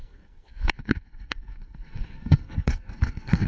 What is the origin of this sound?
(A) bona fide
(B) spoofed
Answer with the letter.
B